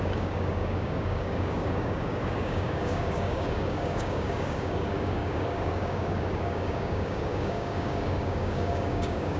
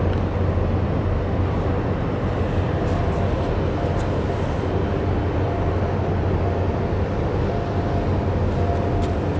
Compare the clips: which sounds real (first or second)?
second